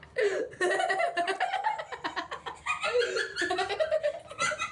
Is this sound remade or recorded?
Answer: recorded